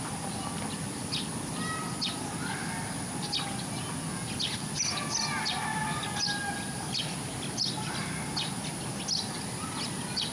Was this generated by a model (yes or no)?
no